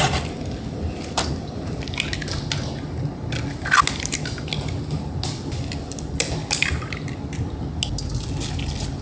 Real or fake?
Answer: real